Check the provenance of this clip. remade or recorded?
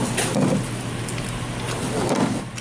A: recorded